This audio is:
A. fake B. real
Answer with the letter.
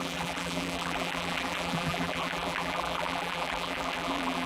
A